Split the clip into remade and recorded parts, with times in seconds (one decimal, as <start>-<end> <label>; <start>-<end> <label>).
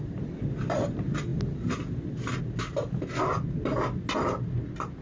0.0-5.0 recorded